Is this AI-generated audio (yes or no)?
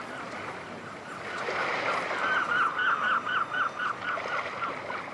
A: no